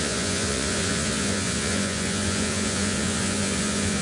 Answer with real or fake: fake